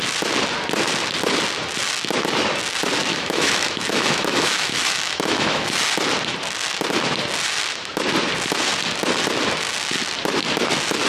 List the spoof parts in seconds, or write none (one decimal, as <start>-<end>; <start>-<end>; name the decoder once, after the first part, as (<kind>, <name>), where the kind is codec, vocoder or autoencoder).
3.1-5.9 (autoencoder, DAC-VAE)